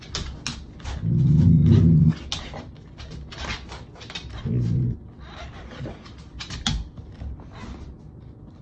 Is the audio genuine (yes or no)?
yes